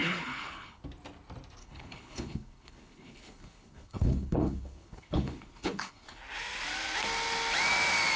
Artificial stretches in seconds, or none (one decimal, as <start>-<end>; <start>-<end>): 0.0-0.8; 1.6-6.2